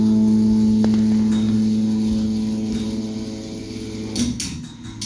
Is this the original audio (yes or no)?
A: yes